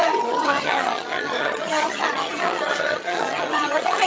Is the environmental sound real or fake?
fake